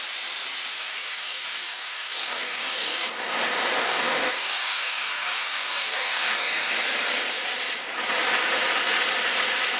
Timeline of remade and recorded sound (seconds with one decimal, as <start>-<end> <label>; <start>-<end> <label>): 0.0-0.7 recorded; 0.7-3.1 remade; 3.1-3.8 recorded; 3.8-6.7 remade; 6.7-9.8 recorded